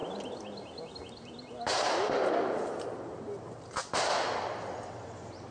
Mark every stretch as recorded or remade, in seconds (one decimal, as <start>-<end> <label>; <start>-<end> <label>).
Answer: 0.0-5.5 recorded